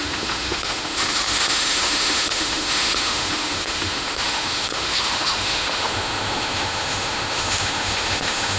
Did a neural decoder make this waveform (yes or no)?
yes